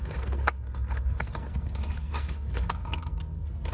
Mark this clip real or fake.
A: fake